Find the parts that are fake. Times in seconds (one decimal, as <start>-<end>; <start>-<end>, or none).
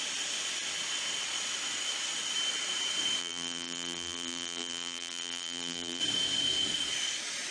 3.2-6.0